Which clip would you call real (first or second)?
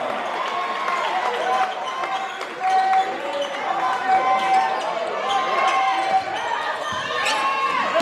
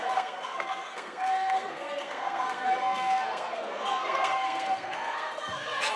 first